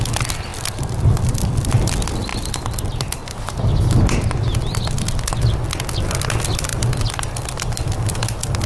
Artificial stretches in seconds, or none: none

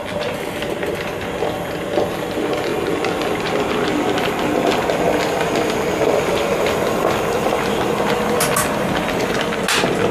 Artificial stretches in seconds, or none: none

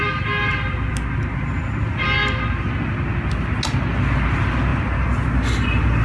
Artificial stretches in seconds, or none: none

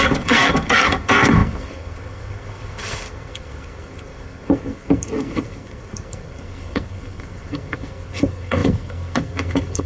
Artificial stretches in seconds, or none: 0.0-9.9

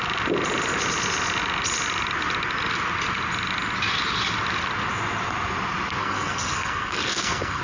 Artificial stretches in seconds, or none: 6.0-7.6

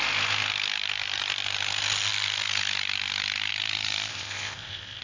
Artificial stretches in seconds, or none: 4.1-5.0

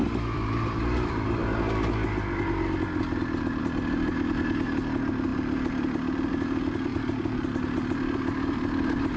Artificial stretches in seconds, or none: 0.0-1.4; 3.6-9.2

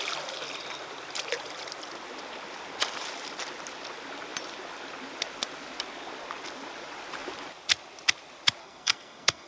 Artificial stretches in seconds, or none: 8.6-9.5